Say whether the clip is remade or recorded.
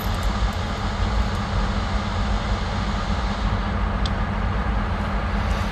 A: recorded